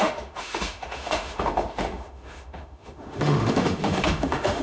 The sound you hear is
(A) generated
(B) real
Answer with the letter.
A